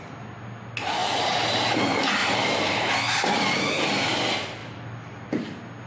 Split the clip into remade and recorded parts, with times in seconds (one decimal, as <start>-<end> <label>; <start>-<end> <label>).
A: 0.0-1.0 recorded; 1.0-1.7 remade; 1.7-2.2 recorded; 2.2-3.3 remade; 3.3-4.6 recorded; 4.6-5.4 remade; 5.4-5.9 recorded